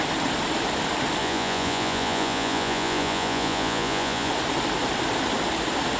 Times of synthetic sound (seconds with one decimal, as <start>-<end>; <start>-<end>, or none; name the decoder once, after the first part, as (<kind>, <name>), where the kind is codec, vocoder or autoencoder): 1.2-4.3 (vocoder, Vocos)